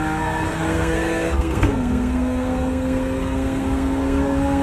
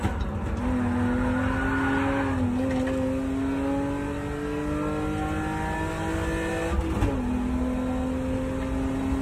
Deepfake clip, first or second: first